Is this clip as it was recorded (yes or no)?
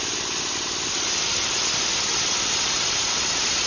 yes